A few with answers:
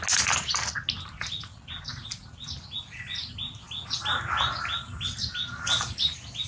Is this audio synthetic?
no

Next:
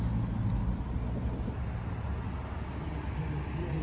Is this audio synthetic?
no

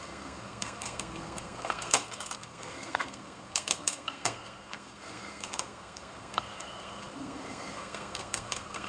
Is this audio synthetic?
yes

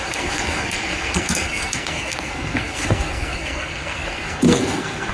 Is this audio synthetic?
yes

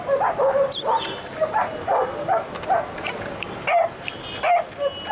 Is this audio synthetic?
no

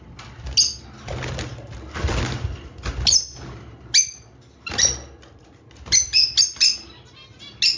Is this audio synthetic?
no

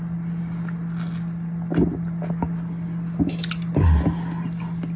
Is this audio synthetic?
no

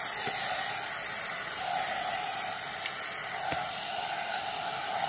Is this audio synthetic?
no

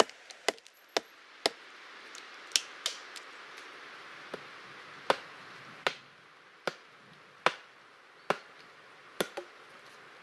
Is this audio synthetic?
no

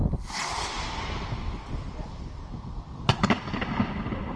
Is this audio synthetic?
no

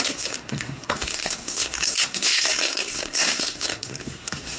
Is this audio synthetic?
yes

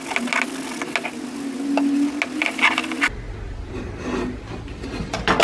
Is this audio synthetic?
no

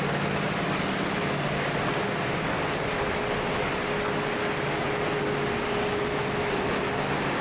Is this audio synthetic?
no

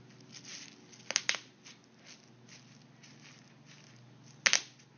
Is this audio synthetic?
no